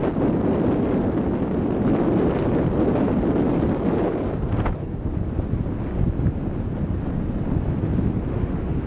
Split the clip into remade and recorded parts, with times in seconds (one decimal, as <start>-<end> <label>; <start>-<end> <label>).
0.0-8.3 recorded; 8.3-8.9 remade

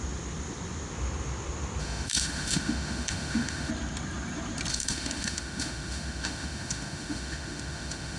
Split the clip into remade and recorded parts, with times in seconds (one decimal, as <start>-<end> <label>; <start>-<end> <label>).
0.0-1.8 recorded; 1.8-3.7 remade; 3.7-4.7 recorded; 4.7-8.2 remade

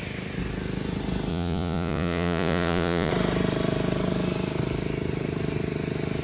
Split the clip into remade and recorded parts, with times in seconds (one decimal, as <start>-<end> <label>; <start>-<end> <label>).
0.0-1.3 recorded; 1.3-3.1 remade; 3.1-6.2 recorded

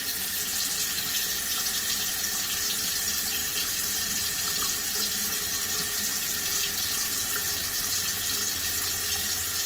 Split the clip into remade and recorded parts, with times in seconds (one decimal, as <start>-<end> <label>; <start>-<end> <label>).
0.0-3.4 recorded; 3.4-5.1 remade; 5.1-6.1 recorded; 6.1-6.7 remade; 6.7-9.7 recorded

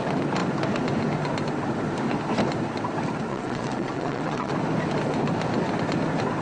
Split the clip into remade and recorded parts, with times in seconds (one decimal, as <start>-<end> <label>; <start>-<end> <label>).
0.0-3.3 recorded; 3.3-4.5 remade; 4.5-6.4 recorded